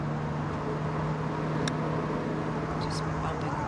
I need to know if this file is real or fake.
real